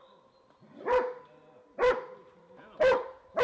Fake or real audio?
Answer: fake